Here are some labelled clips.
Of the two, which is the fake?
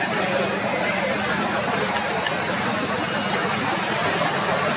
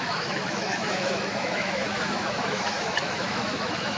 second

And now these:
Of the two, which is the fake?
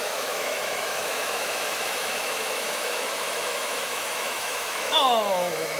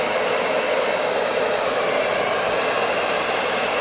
first